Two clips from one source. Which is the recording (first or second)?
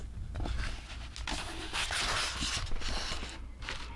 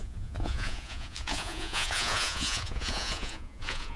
first